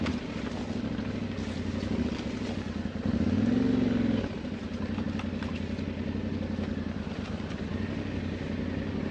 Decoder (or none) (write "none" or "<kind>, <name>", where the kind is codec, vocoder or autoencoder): none